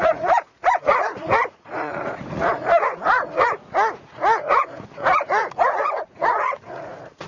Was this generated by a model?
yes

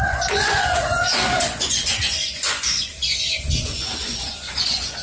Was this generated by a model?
yes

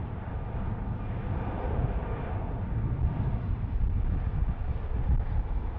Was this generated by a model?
no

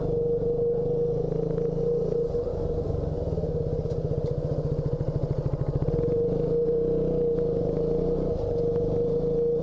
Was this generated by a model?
no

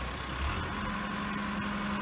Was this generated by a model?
no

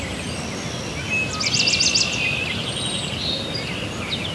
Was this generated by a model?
no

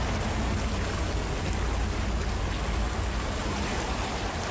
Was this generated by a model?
no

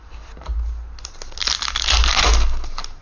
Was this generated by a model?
no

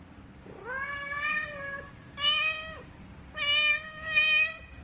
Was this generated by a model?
no